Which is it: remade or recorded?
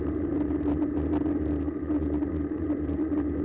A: recorded